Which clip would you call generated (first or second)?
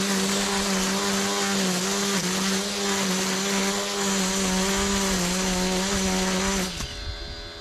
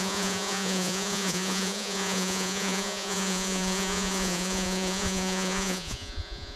second